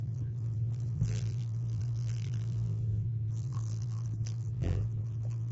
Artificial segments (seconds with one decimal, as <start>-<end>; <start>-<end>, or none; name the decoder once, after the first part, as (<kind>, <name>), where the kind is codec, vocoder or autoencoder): 0.0-5.5 (vocoder, BigVGAN v2)